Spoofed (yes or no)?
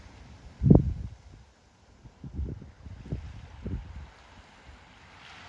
no